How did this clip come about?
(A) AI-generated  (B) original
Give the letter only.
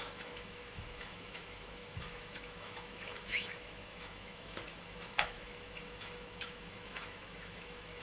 A